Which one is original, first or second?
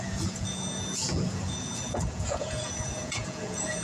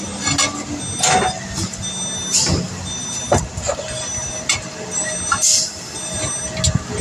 second